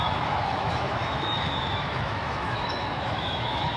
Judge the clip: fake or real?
fake